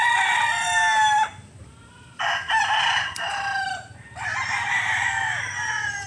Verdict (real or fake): real